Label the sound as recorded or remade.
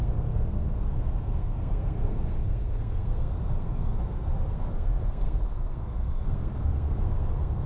remade